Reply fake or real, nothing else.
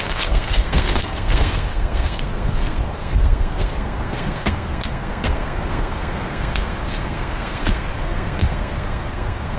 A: fake